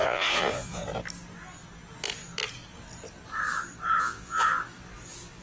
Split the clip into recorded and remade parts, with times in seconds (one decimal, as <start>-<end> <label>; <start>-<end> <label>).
0.0-0.8 remade; 0.8-4.0 recorded; 4.0-4.5 remade; 4.5-5.4 recorded